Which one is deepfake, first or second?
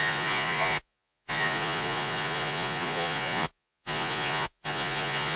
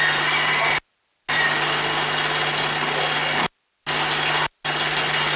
first